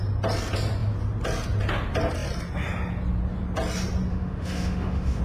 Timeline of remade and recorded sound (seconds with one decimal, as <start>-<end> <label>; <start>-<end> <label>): 0.0-4.1 recorded; 4.1-5.2 remade